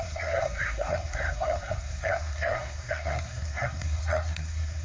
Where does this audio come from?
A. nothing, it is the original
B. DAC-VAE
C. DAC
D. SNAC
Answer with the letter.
D